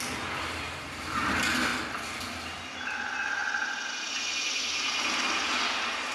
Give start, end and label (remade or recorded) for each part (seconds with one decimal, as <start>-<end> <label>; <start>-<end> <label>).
0.0-6.1 recorded

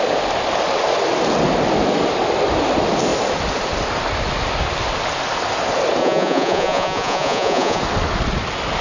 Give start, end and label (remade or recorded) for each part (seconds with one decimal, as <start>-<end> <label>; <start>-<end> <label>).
0.0-6.0 recorded; 6.0-7.8 remade; 7.8-8.8 recorded

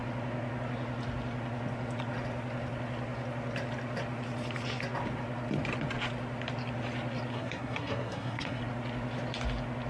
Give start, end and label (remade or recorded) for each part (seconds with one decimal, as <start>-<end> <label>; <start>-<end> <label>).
0.0-7.3 recorded; 7.3-8.6 remade; 8.6-9.9 recorded

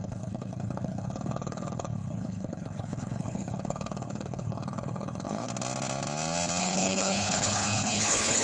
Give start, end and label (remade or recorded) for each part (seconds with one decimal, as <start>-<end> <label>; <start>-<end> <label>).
0.0-5.5 remade; 5.5-6.6 recorded; 6.6-8.4 remade

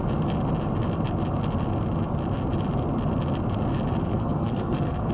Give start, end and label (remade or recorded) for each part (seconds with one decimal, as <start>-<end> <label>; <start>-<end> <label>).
0.0-4.1 recorded; 4.1-5.1 remade

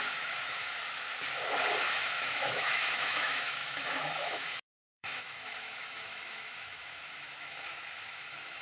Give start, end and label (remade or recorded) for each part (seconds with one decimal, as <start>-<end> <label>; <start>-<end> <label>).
0.0-0.8 remade; 0.8-1.8 recorded; 1.8-8.6 remade

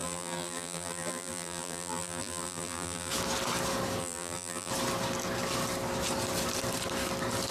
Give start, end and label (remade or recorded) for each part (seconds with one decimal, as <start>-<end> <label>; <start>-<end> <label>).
0.0-3.1 remade; 3.1-4.0 recorded; 4.0-4.7 remade; 4.7-7.5 recorded